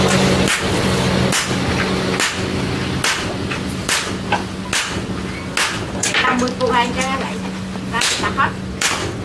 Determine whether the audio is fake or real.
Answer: real